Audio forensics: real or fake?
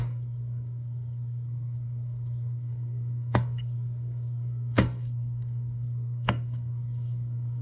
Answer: fake